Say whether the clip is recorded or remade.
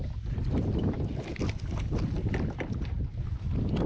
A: recorded